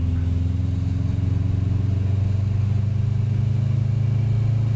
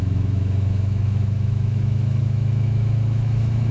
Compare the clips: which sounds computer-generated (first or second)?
second